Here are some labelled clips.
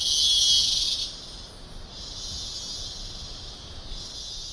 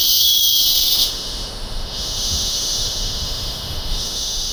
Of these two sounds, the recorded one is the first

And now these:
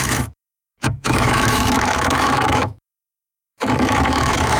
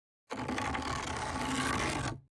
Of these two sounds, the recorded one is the second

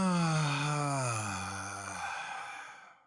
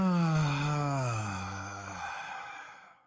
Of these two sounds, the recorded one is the first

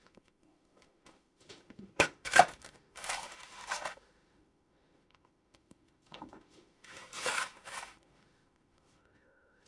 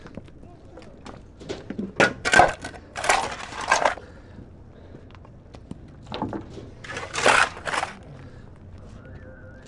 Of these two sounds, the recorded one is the second